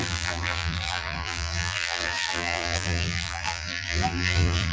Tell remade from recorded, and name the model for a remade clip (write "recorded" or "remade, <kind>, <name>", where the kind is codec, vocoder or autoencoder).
remade, vocoder, BigVGAN v2